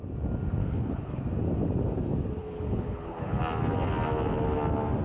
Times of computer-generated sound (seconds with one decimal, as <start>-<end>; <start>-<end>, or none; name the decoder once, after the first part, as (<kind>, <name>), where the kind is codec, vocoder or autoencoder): 0.6-1.2 (codec, HILCodec); 2.4-3.4